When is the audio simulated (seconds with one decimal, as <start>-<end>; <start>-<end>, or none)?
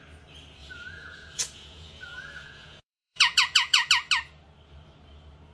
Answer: 0.6-3.9